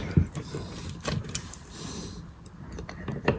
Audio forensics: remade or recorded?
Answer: recorded